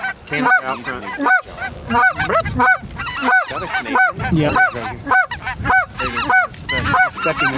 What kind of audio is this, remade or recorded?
recorded